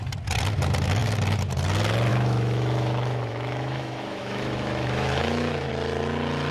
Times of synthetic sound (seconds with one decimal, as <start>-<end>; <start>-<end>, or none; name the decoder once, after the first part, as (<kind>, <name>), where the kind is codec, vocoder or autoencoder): 2.1-5.7 (autoencoder, DAC-VAE)